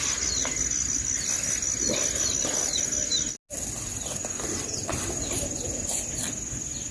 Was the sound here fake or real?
real